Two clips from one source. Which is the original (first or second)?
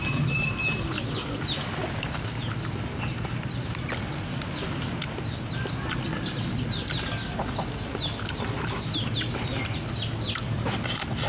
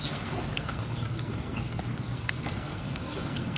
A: first